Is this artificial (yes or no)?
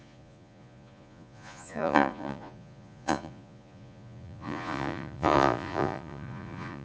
yes